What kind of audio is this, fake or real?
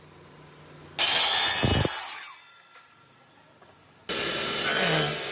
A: real